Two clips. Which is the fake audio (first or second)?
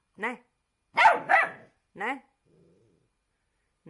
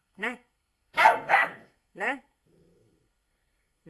second